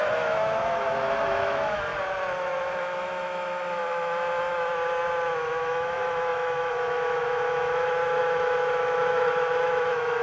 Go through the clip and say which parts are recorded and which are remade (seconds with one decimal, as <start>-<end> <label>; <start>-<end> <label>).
0.0-1.9 remade; 1.9-2.4 recorded; 2.4-10.2 remade